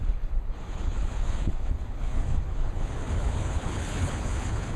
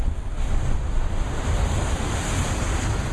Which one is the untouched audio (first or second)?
second